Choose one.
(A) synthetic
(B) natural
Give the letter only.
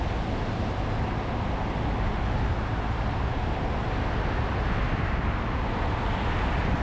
B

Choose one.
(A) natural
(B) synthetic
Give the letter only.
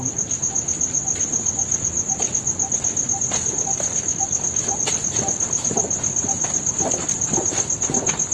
A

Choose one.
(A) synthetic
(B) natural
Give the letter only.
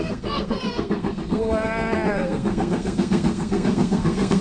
A